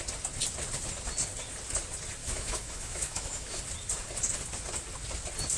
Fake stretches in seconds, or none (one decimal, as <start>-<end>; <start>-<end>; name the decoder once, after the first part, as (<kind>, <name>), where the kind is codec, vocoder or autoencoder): 2.2-3.6 (autoencoder, DAC-VAE)